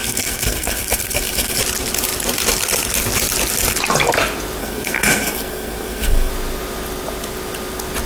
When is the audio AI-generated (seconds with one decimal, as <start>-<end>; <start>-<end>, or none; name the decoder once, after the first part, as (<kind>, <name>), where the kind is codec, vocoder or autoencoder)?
0.0-1.6 (codec, SNAC); 4.6-6.3